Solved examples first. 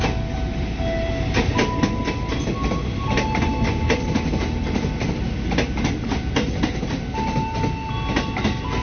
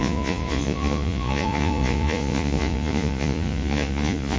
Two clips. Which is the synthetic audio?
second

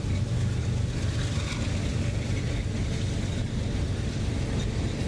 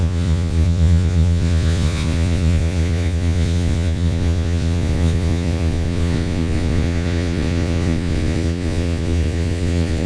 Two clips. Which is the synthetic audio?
second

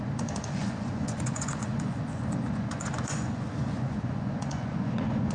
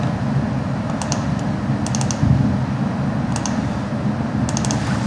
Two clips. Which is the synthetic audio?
first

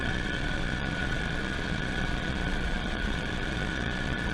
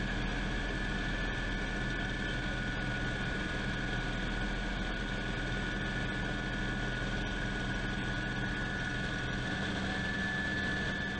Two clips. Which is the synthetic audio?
first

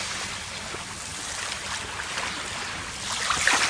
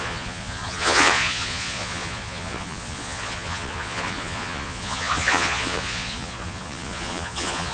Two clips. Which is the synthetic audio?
second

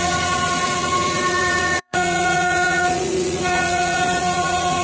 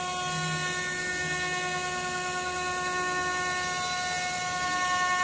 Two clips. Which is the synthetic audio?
first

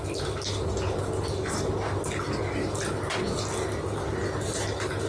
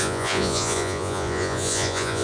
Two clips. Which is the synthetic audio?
second